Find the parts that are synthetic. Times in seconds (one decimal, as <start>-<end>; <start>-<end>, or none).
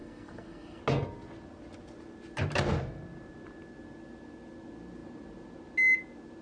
0.0-0.8